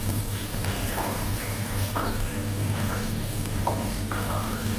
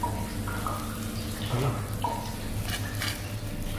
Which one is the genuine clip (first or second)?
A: second